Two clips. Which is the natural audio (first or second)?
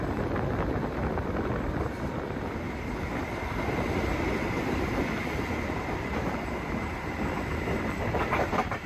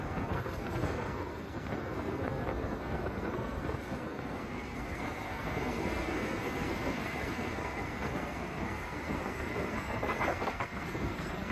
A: first